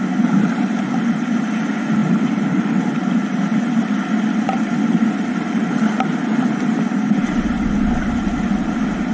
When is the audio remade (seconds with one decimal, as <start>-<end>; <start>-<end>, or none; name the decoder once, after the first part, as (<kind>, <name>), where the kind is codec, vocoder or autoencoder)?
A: none